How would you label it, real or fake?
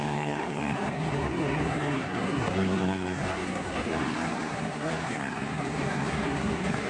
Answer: fake